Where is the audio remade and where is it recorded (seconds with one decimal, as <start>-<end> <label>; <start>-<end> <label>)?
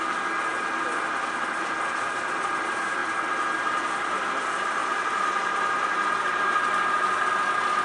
0.0-7.8 recorded